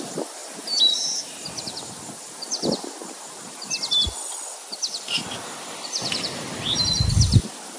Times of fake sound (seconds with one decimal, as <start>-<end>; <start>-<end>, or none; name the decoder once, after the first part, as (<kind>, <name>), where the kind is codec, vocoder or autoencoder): 0.0-7.8 (vocoder, BigVGAN v2)